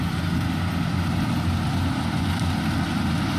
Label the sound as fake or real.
real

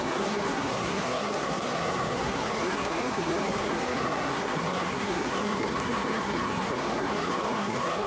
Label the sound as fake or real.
fake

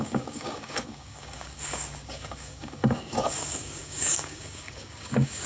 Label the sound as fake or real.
fake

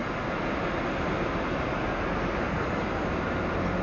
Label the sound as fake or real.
real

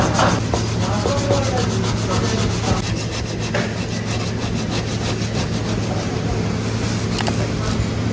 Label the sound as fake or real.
real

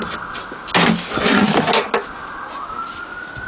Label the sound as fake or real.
real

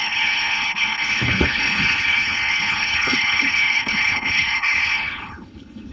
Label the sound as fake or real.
fake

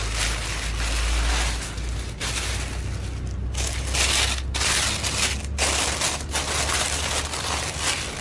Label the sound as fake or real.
real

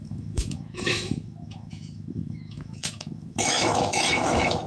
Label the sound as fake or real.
fake